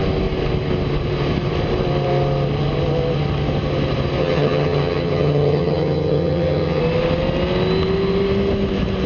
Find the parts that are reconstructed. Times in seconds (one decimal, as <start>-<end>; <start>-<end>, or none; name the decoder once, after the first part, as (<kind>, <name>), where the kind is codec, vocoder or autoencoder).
4.2-6.8 (vocoder, HiFi-GAN)